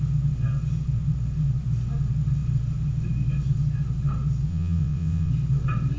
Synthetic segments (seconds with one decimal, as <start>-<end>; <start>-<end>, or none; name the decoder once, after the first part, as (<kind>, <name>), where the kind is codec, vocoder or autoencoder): 4.5-5.3 (vocoder, WaveNeXt)